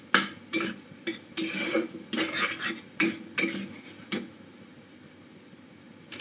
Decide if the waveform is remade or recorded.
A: recorded